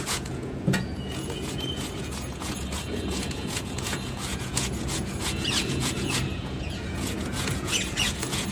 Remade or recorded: remade